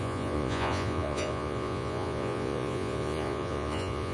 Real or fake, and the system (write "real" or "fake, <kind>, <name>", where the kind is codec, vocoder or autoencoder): fake, vocoder, Vocos